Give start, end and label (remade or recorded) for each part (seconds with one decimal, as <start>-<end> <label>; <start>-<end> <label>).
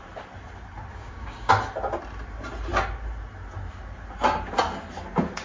0.0-0.9 recorded; 0.9-1.5 remade; 1.5-5.4 recorded